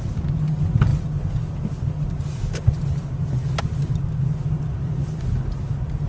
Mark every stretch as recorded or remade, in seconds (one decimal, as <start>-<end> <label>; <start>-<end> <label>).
0.0-6.1 recorded